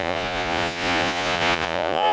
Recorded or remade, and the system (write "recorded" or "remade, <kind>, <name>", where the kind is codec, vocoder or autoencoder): remade, vocoder, Vocos